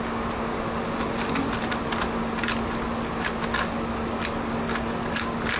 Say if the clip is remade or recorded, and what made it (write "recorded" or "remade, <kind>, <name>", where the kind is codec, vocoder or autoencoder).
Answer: recorded